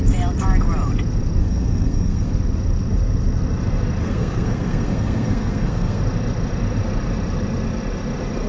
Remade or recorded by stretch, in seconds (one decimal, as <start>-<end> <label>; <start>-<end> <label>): 0.0-1.4 recorded; 1.4-2.3 remade; 2.3-4.0 recorded; 4.0-6.0 remade; 6.0-8.5 recorded